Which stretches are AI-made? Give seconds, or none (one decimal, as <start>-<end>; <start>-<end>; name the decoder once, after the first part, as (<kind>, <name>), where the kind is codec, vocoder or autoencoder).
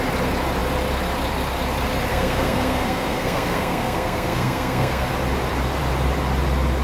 2.1-5.1 (codec, SNAC)